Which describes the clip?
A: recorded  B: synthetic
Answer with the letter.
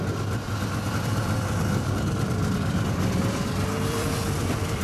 B